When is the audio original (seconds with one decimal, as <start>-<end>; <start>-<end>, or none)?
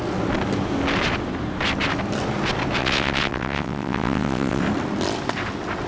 0.0-2.8; 4.6-5.9